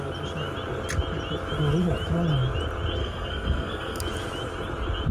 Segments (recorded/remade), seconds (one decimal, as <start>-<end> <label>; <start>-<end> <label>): 0.0-3.0 recorded; 3.0-4.0 remade; 4.0-5.1 recorded